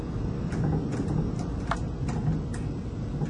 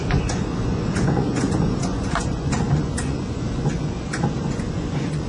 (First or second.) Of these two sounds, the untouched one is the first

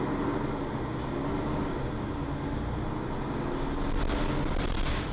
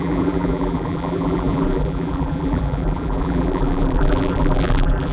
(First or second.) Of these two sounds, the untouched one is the first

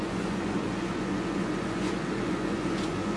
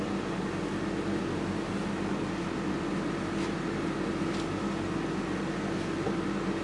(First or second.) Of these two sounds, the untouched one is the second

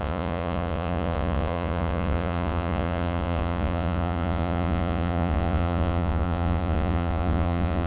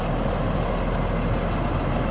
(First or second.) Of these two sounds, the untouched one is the second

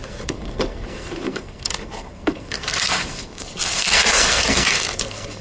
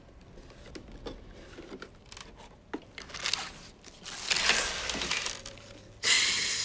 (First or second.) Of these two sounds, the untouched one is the second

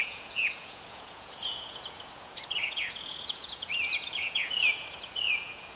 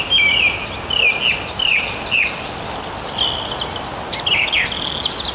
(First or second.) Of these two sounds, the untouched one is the second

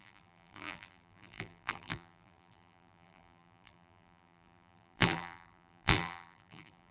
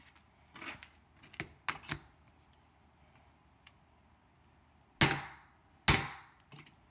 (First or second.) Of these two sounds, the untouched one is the second